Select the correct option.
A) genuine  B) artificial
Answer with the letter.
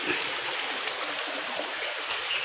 A